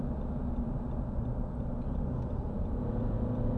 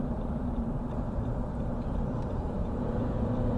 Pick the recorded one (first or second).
first